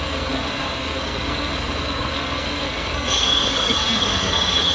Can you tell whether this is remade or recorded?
remade